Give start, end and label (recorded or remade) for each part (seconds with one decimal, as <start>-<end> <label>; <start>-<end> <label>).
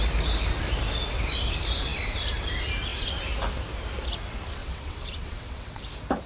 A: 0.0-4.6 recorded; 4.6-5.8 remade; 5.8-6.3 recorded